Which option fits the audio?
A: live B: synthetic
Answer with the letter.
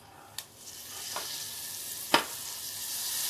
A